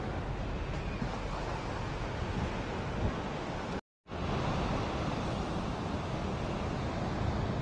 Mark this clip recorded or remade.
recorded